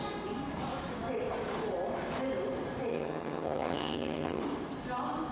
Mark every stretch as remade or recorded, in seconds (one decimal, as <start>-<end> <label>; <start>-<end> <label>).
0.0-2.9 recorded; 2.9-4.4 remade; 4.4-5.3 recorded